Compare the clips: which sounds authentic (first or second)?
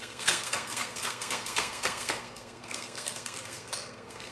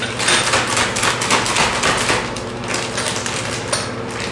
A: second